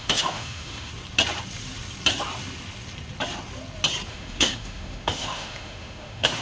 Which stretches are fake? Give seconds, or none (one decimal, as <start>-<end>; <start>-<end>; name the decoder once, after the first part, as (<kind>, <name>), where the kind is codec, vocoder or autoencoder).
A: 0.0-0.9 (autoencoder, DAC-VAE); 4.1-6.4